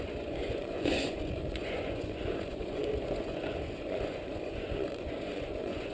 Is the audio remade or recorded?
remade